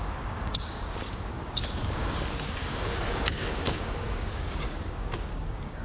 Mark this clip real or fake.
fake